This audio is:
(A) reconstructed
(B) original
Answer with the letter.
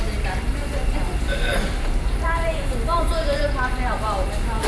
B